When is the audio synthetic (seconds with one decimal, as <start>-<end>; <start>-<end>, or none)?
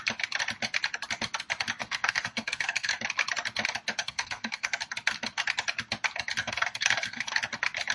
1.8-3.0; 4.0-4.7; 6.4-7.4